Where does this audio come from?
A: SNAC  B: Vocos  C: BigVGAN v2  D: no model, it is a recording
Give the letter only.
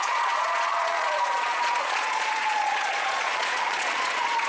B